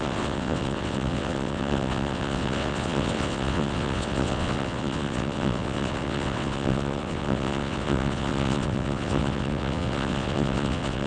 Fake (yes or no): yes